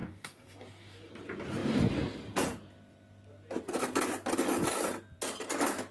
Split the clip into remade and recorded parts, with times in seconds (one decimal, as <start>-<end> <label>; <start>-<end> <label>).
0.0-1.1 remade; 1.1-5.9 recorded